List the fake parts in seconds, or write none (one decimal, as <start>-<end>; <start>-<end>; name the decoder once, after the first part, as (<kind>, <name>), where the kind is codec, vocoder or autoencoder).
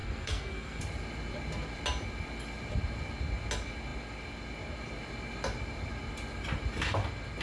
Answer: 0.0-0.8 (codec, SNAC)